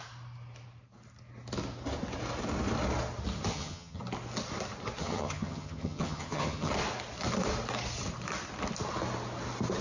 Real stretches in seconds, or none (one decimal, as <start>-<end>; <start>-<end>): 0.0-3.5; 4.0-5.0; 6.7-9.8